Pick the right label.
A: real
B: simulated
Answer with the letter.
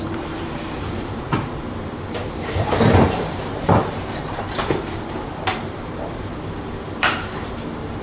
B